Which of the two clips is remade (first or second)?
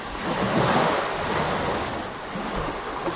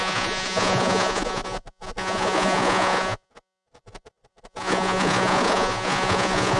second